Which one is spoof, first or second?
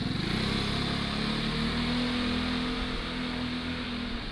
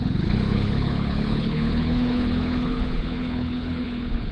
second